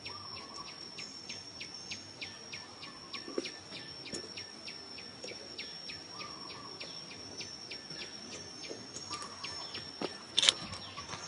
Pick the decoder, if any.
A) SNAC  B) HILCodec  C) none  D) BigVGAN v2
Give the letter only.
C